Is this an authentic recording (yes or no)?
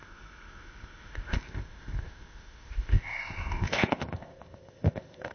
no